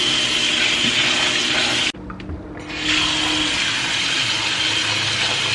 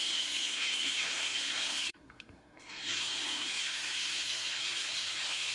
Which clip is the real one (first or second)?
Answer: first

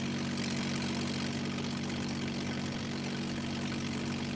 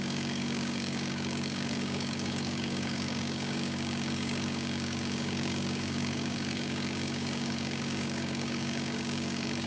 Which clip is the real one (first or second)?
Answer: first